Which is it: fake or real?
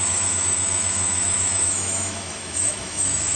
fake